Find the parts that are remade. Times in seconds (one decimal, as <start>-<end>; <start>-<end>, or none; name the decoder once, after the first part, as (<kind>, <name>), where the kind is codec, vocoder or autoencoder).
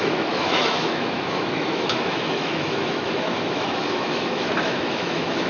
0.0-5.5 (autoencoder, DAC-VAE)